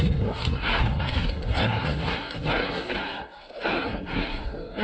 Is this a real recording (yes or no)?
no